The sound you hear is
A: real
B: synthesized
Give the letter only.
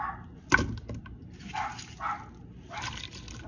A